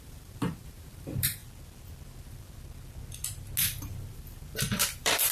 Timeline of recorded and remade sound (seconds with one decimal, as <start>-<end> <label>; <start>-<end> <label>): 0.0-1.4 remade; 1.4-3.8 recorded; 3.8-5.3 remade